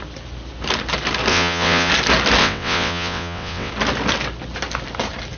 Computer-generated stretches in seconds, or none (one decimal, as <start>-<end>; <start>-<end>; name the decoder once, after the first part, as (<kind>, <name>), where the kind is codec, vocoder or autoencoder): 1.3-1.9 (vocoder, WaveNeXt); 2.4-3.7